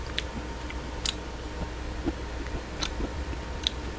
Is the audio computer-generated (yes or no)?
no